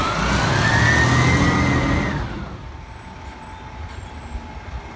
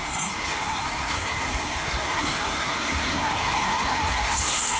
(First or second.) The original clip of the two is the first